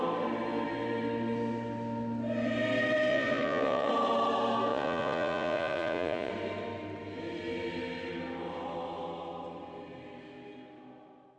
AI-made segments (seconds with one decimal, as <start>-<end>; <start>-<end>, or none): 3.1-3.9; 4.7-6.3